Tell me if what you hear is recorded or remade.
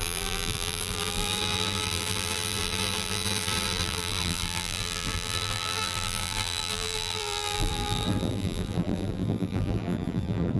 remade